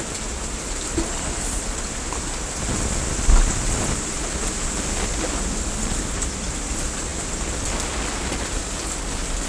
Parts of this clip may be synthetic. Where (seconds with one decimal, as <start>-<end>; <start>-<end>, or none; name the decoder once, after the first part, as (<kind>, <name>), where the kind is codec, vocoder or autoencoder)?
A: none